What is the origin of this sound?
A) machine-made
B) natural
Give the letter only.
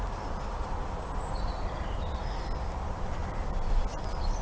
A